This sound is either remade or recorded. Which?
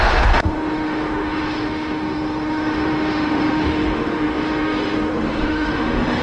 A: remade